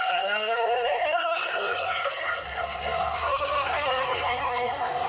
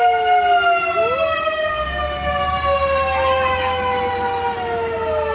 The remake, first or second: first